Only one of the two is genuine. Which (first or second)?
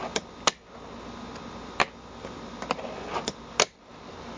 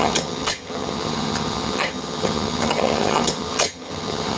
first